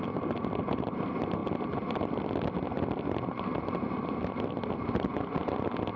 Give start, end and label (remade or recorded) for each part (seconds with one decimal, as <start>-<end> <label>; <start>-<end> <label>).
0.0-6.0 recorded